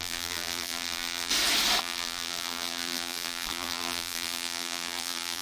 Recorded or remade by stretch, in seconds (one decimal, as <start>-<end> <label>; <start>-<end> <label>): 0.0-1.3 remade; 1.3-1.8 recorded; 1.8-5.4 remade